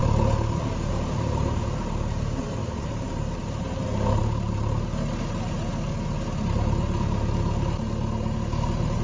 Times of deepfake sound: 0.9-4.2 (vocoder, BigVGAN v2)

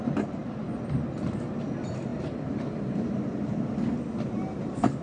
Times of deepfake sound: none

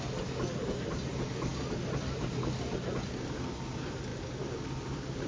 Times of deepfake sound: none

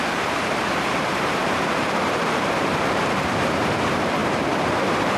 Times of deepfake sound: 0.0-5.2 (vocoder, BigVGAN v2)

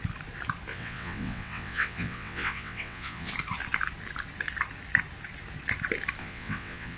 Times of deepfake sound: 0.7-3.3 (vocoder, WaveNeXt); 6.2-7.0